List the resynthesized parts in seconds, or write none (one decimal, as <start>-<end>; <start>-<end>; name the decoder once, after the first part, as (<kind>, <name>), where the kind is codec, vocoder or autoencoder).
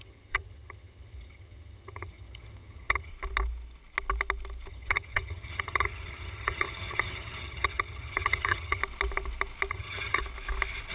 0.0-3.1 (vocoder, HiFi-GAN); 4.7-8.8; 9.7-10.2